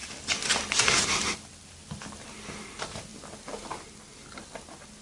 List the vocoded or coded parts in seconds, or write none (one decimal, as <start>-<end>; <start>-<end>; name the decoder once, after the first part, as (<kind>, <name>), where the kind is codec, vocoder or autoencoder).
0.0-2.2 (vocoder, BigVGAN v2); 3.1-3.7